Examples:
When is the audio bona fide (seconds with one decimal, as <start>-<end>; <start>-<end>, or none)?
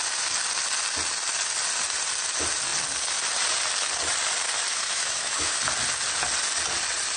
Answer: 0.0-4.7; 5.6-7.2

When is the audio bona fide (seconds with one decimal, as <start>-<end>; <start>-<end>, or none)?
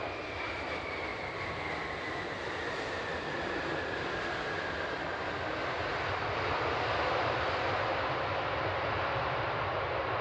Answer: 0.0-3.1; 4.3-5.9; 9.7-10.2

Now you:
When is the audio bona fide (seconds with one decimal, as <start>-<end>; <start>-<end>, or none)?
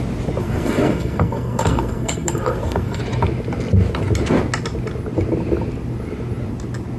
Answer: 0.0-0.4; 3.0-7.0